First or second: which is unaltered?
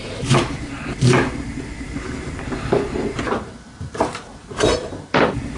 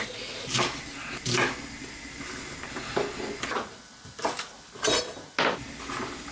second